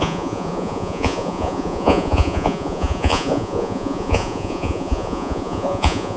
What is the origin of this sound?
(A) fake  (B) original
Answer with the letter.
A